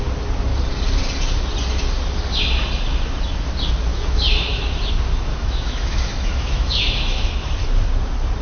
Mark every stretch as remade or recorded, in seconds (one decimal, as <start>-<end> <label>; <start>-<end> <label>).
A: 0.0-3.9 recorded; 3.9-4.7 remade; 4.7-5.3 recorded; 5.3-7.5 remade; 7.5-8.4 recorded